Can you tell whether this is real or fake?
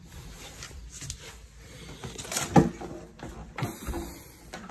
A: real